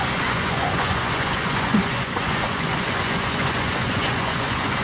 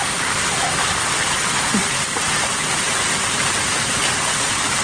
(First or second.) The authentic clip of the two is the second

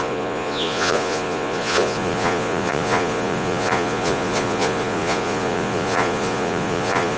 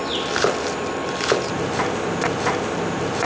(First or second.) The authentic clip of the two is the second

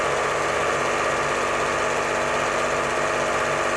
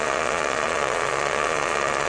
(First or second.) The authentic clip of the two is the first